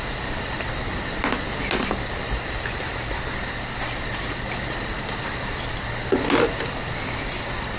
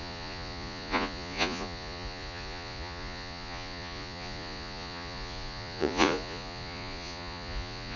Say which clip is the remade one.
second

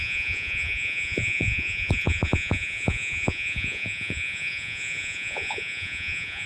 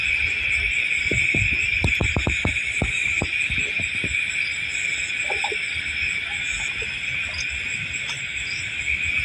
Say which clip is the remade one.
first